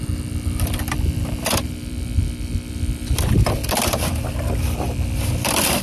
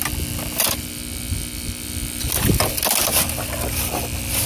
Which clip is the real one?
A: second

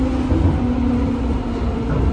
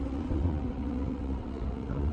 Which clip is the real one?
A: first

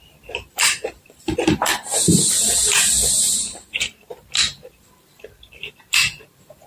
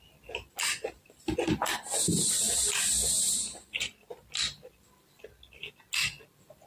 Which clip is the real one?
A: second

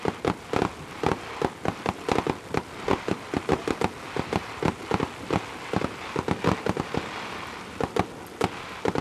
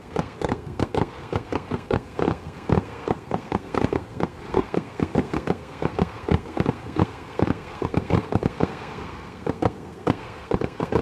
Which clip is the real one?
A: first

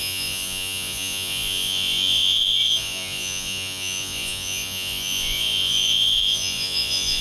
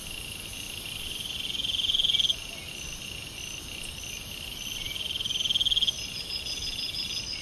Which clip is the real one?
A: second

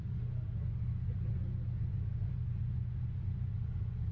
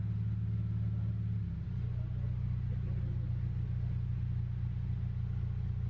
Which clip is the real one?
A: second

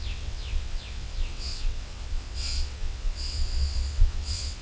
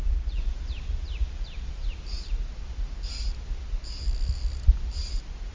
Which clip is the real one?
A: second